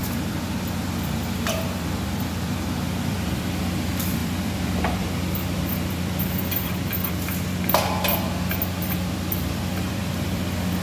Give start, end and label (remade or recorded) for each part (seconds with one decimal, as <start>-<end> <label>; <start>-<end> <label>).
0.0-8.1 remade; 8.1-8.8 recorded; 8.8-10.8 remade